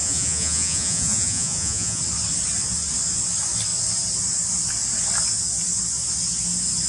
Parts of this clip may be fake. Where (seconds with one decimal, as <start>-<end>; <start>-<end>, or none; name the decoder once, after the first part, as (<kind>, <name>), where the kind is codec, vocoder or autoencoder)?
0.0-2.0 (vocoder, Vocos)